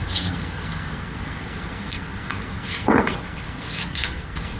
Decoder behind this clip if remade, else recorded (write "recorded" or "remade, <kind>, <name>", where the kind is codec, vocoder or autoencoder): remade, codec, SNAC